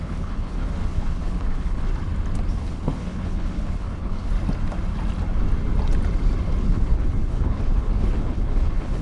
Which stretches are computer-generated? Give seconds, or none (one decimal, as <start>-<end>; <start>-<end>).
0.0-1.9; 2.5-4.3; 6.6-9.0